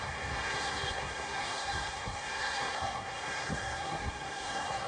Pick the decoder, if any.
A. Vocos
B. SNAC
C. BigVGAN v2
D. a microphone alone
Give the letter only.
B